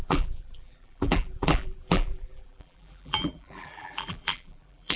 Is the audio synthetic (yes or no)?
yes